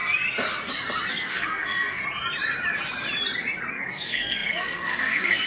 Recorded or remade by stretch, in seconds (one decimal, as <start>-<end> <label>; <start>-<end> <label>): 0.0-1.1 recorded; 1.1-2.0 remade; 2.0-3.7 recorded; 3.7-5.5 remade